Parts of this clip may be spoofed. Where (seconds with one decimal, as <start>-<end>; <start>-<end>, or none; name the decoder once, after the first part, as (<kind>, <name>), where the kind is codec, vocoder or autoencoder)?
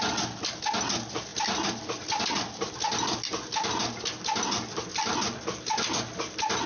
none